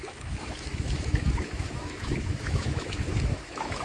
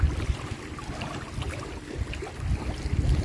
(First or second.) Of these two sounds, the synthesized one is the first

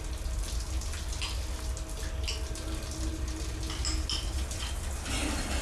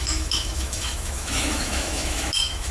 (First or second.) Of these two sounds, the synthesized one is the second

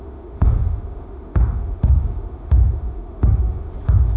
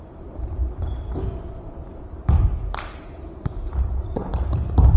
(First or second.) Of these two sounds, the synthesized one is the first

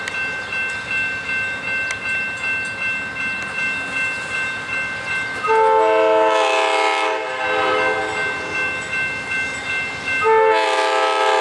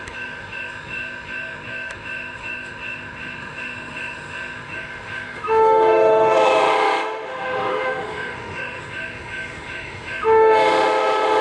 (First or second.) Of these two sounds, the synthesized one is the second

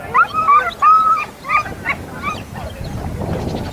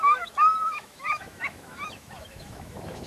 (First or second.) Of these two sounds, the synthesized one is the second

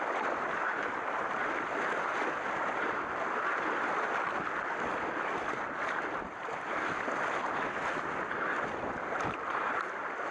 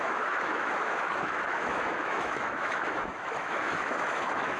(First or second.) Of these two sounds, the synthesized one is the second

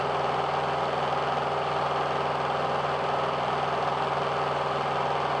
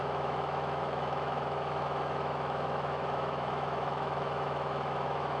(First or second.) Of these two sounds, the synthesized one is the second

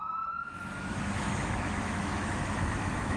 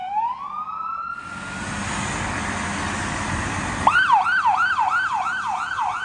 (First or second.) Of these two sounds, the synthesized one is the first